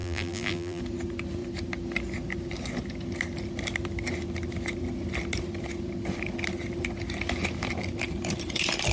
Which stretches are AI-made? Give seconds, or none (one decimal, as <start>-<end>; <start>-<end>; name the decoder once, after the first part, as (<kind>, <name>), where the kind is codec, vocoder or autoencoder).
0.0-0.8 (vocoder, BigVGAN v2)